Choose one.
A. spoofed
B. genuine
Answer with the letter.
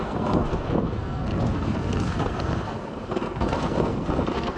A